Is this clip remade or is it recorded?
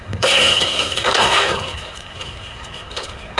remade